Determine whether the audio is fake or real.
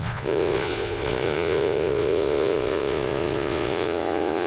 fake